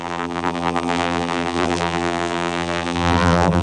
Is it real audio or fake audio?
fake